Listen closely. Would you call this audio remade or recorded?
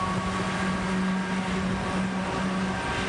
recorded